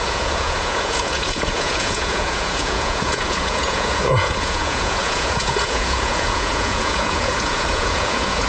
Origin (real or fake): fake